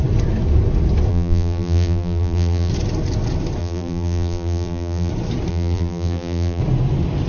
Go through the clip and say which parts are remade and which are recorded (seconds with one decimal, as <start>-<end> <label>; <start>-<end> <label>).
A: 0.0-1.1 recorded; 1.1-2.7 remade; 2.7-3.6 recorded; 3.6-5.1 remade; 5.1-5.5 recorded; 5.5-6.6 remade; 6.6-7.3 recorded